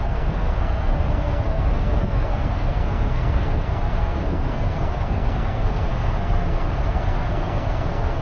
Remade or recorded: remade